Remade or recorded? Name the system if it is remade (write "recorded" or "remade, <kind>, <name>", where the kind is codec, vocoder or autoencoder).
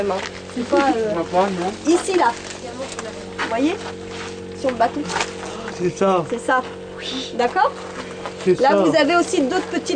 recorded